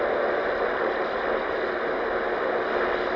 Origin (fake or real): real